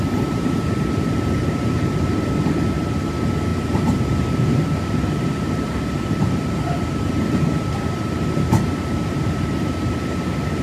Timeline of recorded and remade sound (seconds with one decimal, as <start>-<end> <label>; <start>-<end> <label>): 0.0-10.6 remade